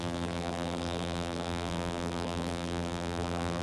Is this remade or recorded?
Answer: remade